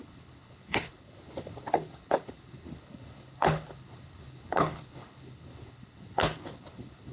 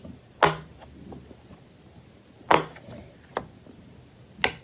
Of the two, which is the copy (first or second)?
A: first